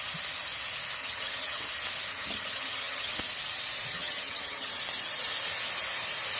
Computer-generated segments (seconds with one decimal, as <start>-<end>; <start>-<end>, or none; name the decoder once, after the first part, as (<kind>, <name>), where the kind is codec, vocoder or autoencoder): 1.0-1.6 (vocoder, HiFi-GAN); 2.1-3.1; 3.9-4.7